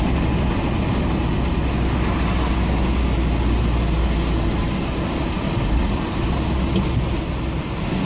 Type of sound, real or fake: real